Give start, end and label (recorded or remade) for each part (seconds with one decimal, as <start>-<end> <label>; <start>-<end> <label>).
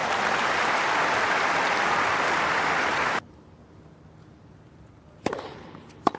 0.0-6.2 remade